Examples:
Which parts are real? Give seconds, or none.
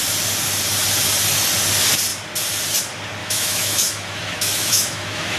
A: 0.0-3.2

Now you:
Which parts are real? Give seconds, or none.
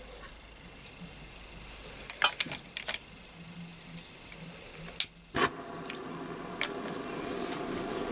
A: 0.0-8.1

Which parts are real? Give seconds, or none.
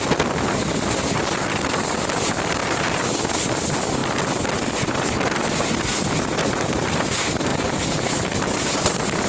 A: 0.0-9.3